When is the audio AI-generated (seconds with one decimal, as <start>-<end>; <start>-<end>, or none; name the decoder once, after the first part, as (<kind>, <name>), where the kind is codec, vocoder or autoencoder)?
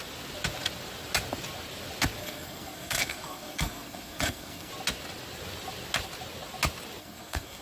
2.2-4.7 (codec, SNAC); 7.0-7.6